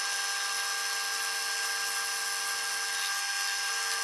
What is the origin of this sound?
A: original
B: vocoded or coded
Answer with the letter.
A